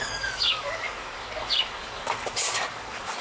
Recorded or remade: remade